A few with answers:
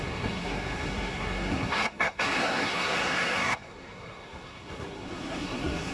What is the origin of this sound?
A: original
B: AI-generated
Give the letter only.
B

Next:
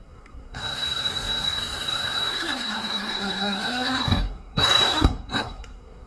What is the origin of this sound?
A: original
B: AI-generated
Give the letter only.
B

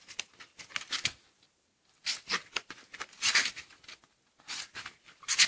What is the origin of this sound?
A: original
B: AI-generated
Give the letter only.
A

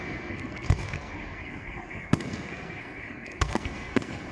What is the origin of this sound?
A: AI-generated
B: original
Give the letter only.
A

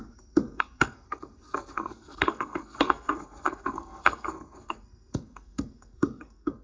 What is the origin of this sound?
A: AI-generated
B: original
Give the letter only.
A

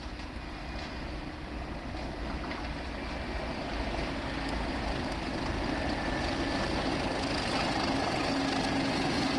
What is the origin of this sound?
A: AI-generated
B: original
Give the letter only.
B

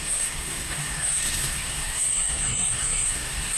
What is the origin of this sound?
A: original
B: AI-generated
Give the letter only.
B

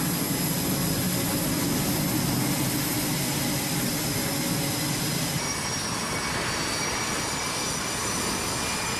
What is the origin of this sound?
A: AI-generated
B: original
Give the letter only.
B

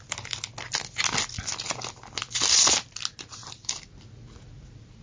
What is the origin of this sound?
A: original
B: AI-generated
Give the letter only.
A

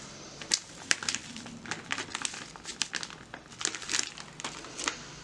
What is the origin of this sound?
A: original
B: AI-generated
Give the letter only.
A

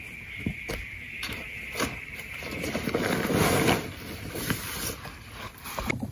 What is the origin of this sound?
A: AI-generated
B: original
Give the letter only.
B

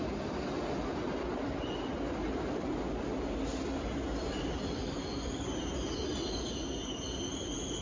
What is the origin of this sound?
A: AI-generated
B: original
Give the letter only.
B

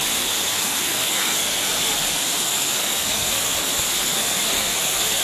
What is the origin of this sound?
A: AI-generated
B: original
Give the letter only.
A